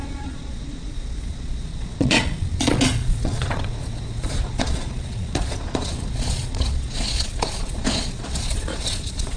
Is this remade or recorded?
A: remade